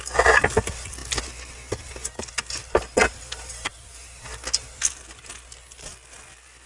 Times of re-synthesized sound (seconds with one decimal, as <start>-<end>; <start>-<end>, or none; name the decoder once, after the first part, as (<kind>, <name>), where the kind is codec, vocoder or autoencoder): none